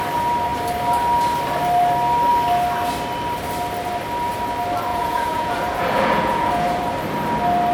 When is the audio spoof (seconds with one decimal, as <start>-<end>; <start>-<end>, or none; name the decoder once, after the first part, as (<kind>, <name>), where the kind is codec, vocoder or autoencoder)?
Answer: 4.9-6.8 (vocoder, Vocos)